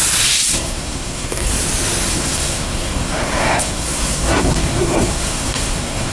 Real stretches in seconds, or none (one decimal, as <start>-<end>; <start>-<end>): 0.0-0.5; 1.5-2.1